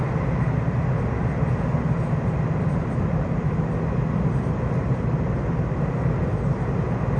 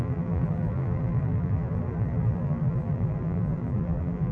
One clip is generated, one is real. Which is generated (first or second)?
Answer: second